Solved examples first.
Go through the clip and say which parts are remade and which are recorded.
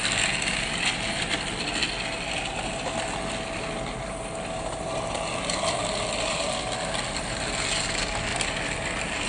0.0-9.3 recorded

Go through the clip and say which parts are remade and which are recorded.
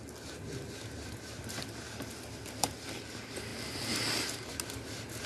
0.0-5.3 recorded